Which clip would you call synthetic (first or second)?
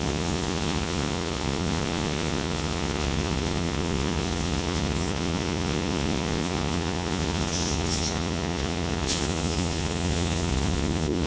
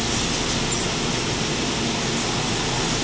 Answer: first